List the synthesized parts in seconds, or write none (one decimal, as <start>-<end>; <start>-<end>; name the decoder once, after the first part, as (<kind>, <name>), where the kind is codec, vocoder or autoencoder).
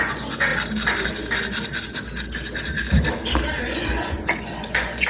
0.0-0.5 (vocoder, Vocos); 3.6-5.1